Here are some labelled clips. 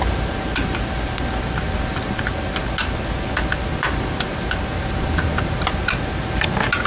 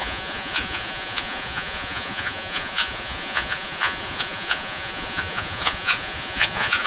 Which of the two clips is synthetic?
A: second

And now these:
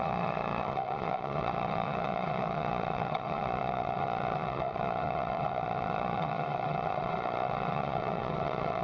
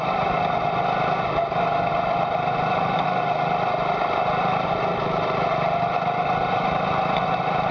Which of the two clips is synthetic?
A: first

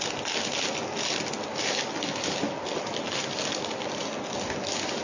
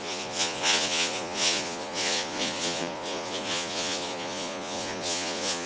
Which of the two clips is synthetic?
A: second